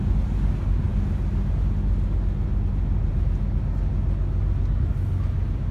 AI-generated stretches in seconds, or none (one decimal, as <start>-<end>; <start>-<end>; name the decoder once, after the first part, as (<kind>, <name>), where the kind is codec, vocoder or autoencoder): none